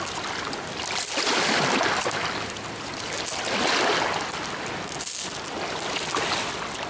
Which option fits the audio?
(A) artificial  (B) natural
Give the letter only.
B